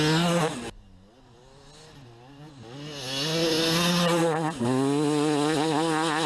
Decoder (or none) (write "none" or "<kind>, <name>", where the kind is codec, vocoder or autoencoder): none